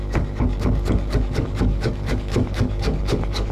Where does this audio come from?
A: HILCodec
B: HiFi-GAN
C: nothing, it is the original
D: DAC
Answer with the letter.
D